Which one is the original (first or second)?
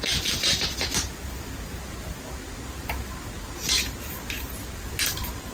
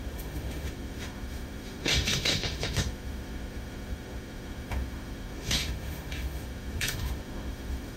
first